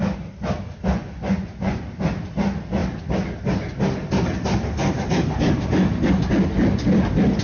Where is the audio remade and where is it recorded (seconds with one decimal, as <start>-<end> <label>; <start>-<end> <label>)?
0.0-0.9 recorded; 0.9-1.8 remade; 1.8-7.4 recorded